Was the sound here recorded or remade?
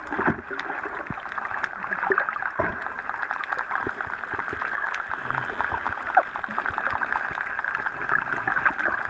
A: recorded